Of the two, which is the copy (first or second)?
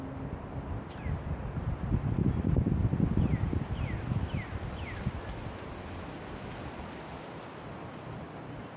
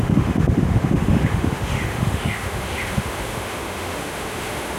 second